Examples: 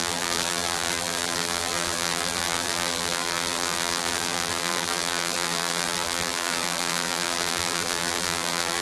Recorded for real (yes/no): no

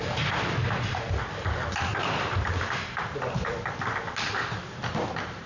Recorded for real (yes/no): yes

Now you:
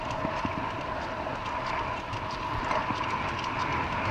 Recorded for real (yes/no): yes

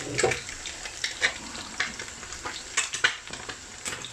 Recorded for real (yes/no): yes